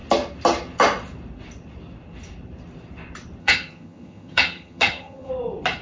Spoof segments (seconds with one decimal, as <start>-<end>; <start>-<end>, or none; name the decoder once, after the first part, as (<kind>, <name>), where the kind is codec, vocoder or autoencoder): 3.4-5.3 (vocoder, HiFi-GAN)